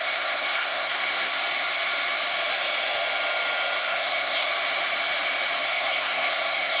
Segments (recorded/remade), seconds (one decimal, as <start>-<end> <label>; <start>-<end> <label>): 0.0-1.3 remade; 1.3-3.8 recorded; 3.8-4.5 remade; 4.5-5.6 recorded; 5.6-6.8 remade